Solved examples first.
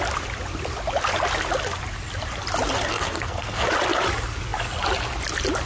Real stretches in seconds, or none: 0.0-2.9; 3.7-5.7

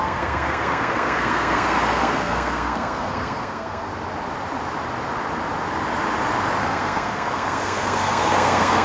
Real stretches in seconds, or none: 3.9-6.6